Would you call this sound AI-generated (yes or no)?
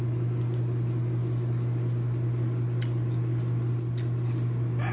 no